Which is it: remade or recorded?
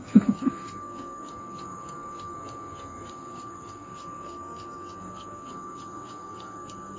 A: remade